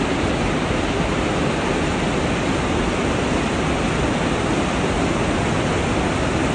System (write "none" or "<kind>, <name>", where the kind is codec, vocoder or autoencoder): none